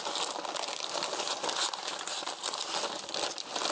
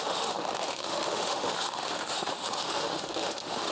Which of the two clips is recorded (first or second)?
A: first